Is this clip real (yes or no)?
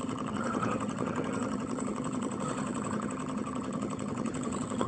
no